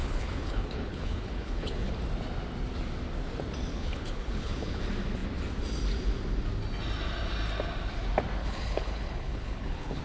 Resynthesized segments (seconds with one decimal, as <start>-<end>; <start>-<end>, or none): 0.0-1.9; 3.7-4.8; 8.4-10.0